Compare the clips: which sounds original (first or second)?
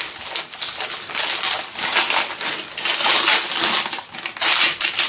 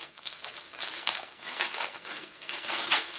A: first